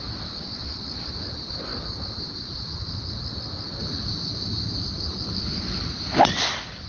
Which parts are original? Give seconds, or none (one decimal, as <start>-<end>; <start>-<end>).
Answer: 0.0-3.8; 6.2-6.9